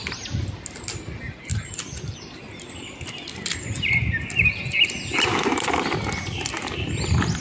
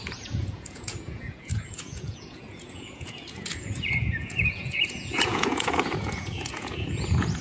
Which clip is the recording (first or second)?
first